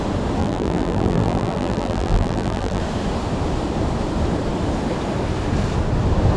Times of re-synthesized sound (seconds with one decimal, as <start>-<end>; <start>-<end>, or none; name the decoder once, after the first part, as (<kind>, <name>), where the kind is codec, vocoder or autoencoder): 0.4-2.8 (vocoder, BigVGAN v2)